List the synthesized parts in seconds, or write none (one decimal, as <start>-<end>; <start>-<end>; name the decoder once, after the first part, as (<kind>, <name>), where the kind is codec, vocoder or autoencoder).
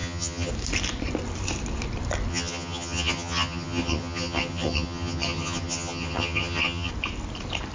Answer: 0.0-0.5 (vocoder, HiFi-GAN); 2.3-6.9